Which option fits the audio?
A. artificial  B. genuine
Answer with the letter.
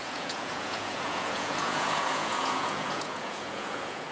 A